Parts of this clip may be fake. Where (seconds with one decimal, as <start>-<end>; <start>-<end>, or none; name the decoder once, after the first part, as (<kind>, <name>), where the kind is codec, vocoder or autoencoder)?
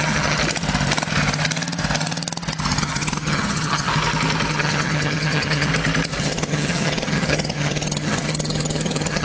0.0-0.4 (vocoder, HiFi-GAN); 2.8-3.9; 4.5-5.7; 6.2-9.2